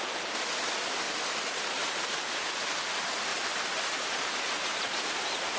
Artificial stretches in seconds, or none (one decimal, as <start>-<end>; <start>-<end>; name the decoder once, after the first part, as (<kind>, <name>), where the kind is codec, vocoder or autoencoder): 3.3-5.0 (vocoder, BigVGAN v2)